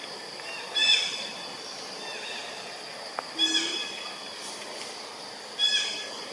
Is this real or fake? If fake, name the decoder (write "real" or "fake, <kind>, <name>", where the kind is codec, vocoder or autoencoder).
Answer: real